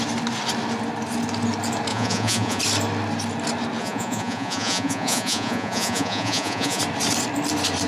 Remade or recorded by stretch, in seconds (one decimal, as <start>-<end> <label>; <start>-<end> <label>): 0.0-1.9 recorded; 1.9-2.6 remade; 2.6-3.8 recorded; 3.8-6.8 remade; 6.8-7.9 recorded